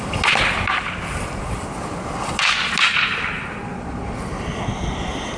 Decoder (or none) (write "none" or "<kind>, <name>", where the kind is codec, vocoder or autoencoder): none